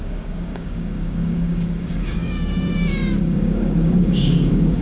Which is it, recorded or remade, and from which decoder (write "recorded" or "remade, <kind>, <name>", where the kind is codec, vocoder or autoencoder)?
remade, codec, DAC